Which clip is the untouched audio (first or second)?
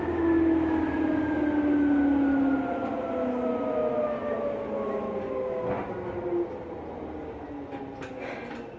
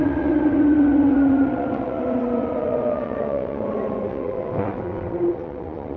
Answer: first